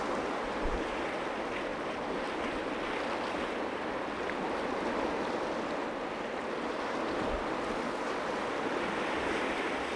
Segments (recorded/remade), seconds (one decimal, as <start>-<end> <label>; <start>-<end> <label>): 0.0-1.7 recorded; 1.7-2.7 remade; 2.7-10.0 recorded